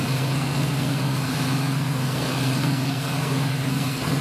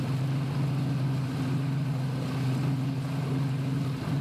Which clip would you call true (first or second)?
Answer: second